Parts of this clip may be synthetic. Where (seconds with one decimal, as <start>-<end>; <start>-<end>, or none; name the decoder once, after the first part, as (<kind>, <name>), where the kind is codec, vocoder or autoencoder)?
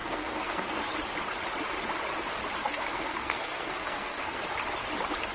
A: 0.0-0.8 (codec, SNAC); 2.6-4.4